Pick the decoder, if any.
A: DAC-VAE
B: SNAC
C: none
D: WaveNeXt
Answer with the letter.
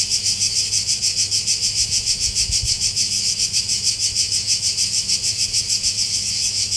A